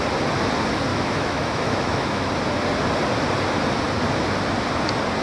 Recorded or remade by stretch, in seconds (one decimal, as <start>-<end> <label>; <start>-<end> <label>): 0.0-0.9 recorded; 0.9-2.3 remade; 2.3-5.2 recorded